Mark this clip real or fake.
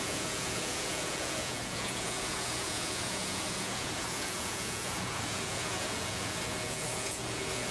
fake